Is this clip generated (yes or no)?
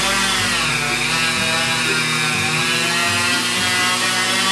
no